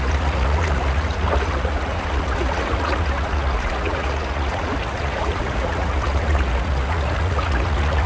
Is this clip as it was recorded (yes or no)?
no